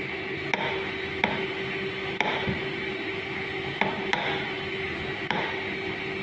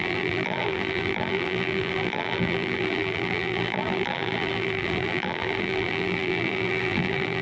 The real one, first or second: first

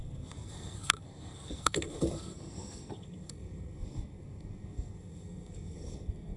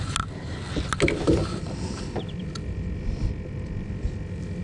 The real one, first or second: second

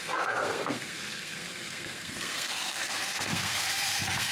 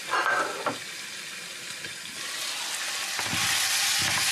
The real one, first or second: second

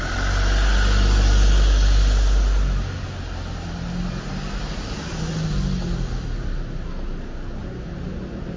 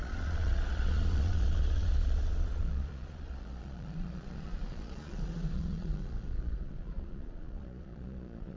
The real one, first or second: first